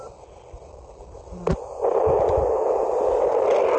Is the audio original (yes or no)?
yes